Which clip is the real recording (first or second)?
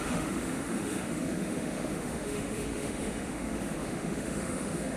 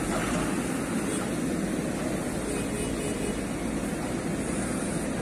second